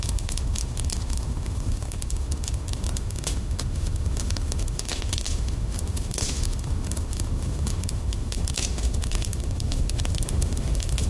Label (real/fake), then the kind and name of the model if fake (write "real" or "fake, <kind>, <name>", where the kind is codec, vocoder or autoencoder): fake, autoencoder, DAC-VAE